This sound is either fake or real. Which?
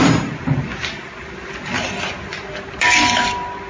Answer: real